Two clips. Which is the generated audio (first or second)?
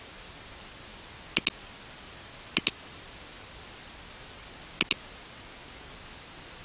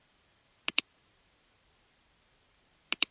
second